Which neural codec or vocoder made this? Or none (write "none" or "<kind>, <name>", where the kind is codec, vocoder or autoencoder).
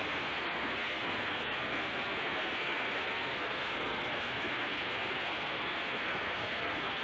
codec, SNAC